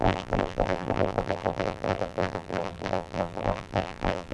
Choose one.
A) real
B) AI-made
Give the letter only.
B